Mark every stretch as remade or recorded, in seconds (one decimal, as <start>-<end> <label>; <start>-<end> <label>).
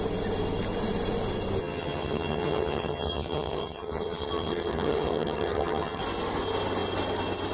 0.0-1.6 recorded; 1.6-6.0 remade; 6.0-7.5 recorded